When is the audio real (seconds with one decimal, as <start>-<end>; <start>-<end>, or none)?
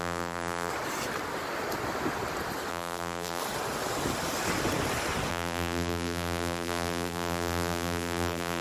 0.7-2.7; 3.4-5.3